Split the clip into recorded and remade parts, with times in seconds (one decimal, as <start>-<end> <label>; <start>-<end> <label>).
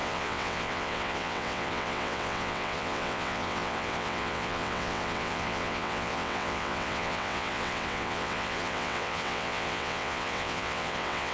0.0-11.3 remade